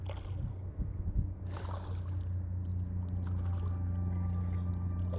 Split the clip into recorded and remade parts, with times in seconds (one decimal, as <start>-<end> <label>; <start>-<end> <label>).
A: 0.0-0.5 recorded; 0.5-1.1 remade; 1.1-5.2 recorded